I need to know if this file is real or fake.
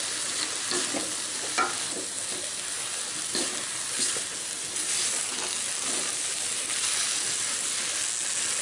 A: real